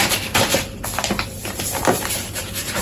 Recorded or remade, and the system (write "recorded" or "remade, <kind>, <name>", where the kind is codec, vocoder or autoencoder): remade, vocoder, BigVGAN v2